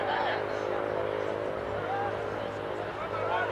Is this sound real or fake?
real